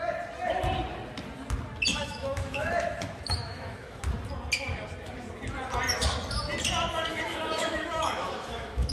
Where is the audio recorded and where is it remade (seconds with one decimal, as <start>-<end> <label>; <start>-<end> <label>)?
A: 0.0-1.9 recorded; 1.9-4.0 remade; 4.0-7.1 recorded; 7.1-8.9 remade